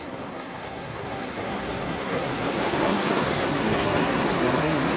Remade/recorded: remade